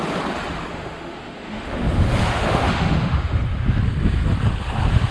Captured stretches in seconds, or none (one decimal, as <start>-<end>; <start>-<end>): 0.0-0.7; 3.8-5.1